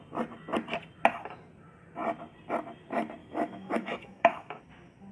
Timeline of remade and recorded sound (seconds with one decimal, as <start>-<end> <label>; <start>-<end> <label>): 0.0-3.2 recorded; 3.2-4.6 remade; 4.6-5.1 recorded